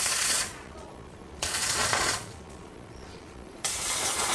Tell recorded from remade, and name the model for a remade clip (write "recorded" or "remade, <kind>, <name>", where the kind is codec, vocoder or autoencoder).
remade, vocoder, Vocos